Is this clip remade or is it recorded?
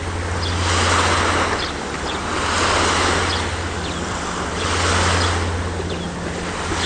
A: recorded